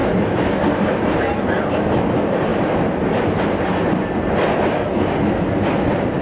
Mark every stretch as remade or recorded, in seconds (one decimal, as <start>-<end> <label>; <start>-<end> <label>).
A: 0.0-2.5 recorded; 2.5-4.0 remade; 4.0-6.2 recorded